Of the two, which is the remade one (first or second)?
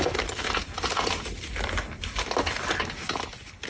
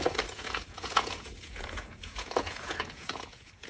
second